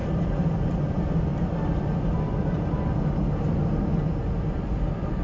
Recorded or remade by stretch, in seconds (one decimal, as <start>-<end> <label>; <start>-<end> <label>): 0.0-1.3 remade; 1.3-4.4 recorded; 4.4-5.2 remade